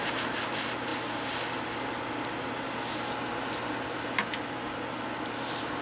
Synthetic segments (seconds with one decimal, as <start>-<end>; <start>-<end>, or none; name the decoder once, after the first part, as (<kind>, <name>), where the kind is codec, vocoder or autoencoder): none